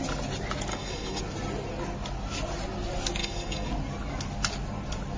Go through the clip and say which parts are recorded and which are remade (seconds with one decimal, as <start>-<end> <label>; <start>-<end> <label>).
0.0-0.7 recorded; 0.7-1.2 remade; 1.2-3.2 recorded; 3.2-3.7 remade; 3.7-5.2 recorded